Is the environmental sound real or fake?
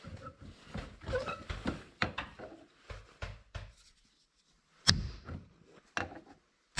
real